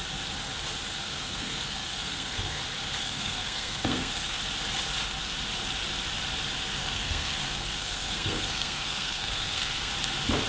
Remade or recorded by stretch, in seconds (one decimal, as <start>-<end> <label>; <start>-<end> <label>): 0.0-1.0 recorded; 1.0-2.6 remade; 2.6-3.0 recorded; 3.0-4.4 remade; 4.4-6.8 recorded; 6.8-9.9 remade; 9.9-10.5 recorded